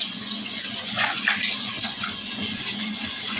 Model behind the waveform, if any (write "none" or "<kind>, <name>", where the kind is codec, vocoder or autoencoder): vocoder, Vocos